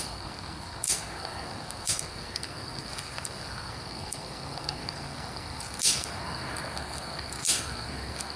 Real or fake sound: fake